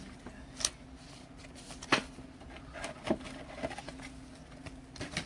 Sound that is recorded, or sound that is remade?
recorded